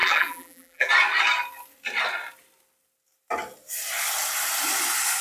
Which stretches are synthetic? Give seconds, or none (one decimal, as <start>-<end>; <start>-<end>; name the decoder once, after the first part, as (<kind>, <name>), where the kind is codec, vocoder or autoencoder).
0.0-0.9 (vocoder, BigVGAN v2)